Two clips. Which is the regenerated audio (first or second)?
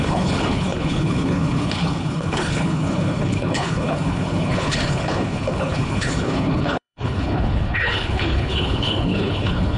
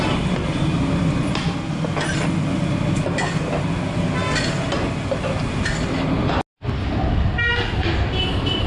first